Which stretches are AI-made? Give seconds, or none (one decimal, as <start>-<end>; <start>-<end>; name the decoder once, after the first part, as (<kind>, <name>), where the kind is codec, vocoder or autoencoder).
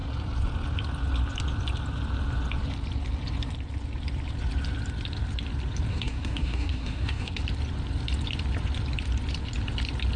5.9-7.4 (codec, SNAC)